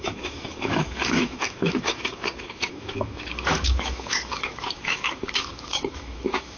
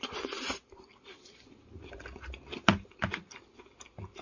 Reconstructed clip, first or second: first